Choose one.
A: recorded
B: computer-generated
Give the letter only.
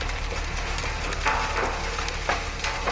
A